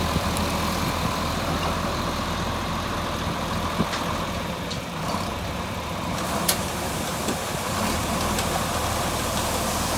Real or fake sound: fake